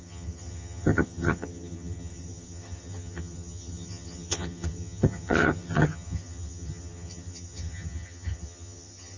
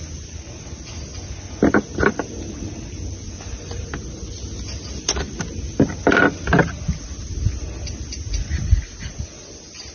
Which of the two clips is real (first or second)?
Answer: second